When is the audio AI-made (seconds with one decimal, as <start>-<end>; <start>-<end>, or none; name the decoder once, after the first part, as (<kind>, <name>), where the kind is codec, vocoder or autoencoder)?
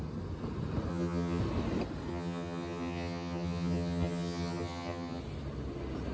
0.9-1.4 (vocoder, HiFi-GAN); 2.1-5.2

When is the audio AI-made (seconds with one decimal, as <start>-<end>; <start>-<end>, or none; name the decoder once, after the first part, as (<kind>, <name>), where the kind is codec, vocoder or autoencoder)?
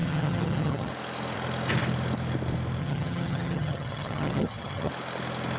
0.0-0.9 (vocoder, HiFi-GAN); 2.8-4.9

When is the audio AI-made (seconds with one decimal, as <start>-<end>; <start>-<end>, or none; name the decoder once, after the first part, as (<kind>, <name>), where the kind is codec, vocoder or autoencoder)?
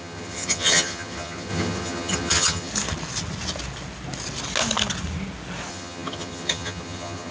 0.0-2.7 (vocoder, HiFi-GAN); 5.7-7.3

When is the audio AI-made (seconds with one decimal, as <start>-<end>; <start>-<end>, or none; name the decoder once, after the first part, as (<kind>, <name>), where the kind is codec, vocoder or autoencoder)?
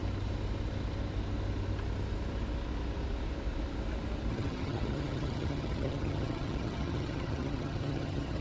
4.3-8.4 (vocoder, HiFi-GAN)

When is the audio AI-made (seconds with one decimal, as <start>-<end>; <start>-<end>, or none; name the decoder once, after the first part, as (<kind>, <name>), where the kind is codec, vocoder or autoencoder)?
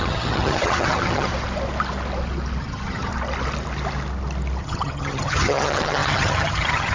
0.0-1.3 (vocoder, HiFi-GAN); 2.6-3.1; 4.6-6.9